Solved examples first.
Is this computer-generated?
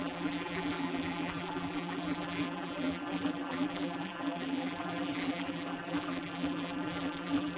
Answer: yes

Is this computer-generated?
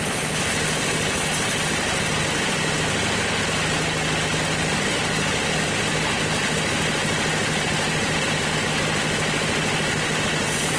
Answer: no